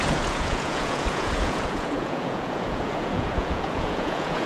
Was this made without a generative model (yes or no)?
no